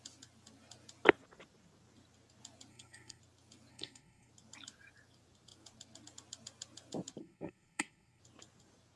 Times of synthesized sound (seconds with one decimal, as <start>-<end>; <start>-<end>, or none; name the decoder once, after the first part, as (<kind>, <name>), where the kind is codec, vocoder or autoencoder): 2.7-3.2 (codec, SNAC); 3.7-4.3; 7.2-8.2